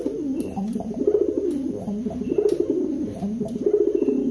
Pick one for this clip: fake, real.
real